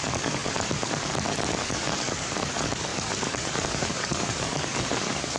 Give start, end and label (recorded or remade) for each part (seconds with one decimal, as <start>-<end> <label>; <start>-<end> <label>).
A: 0.0-5.4 remade